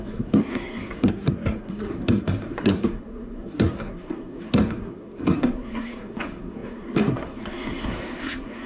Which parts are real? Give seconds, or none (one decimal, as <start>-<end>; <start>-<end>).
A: none

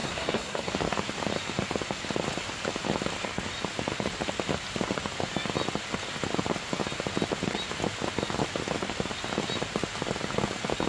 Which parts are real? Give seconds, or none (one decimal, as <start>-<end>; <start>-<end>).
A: 0.7-10.9

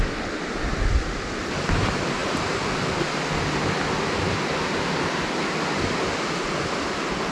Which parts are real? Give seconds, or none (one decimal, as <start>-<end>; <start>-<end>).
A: 0.0-7.3

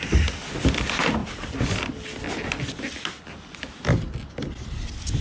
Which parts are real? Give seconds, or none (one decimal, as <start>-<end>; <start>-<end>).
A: 0.0-5.2

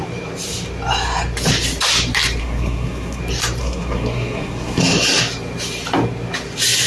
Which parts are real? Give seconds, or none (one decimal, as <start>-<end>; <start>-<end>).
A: 0.0-2.4; 3.2-3.6; 4.8-6.9